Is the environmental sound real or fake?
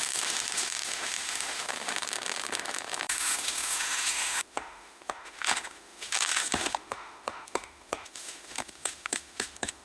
fake